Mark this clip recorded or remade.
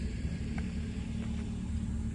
recorded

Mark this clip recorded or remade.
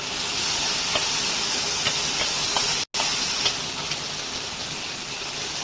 recorded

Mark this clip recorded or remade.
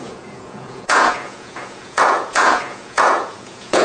remade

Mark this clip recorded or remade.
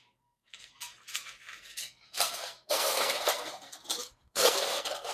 remade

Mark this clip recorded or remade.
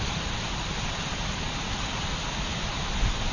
recorded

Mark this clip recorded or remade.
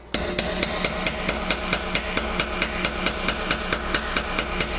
recorded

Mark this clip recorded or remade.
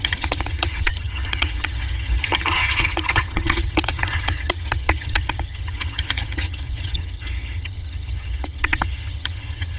remade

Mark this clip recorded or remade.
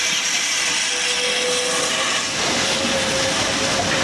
recorded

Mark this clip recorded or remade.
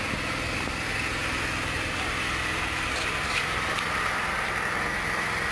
recorded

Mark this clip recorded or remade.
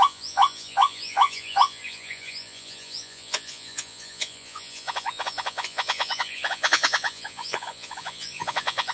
remade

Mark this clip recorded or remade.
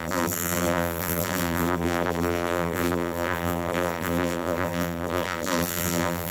remade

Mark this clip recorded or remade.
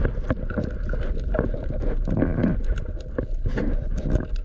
recorded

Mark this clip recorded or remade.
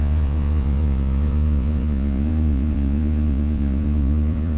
remade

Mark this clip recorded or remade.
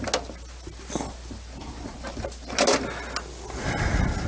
recorded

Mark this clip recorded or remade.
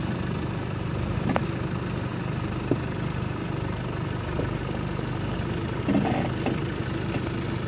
recorded